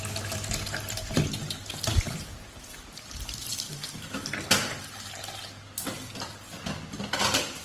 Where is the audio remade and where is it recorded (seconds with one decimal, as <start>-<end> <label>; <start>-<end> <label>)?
0.0-7.6 recorded